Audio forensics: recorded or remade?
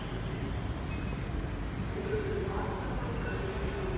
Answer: recorded